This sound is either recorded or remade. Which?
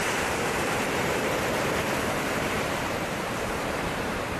remade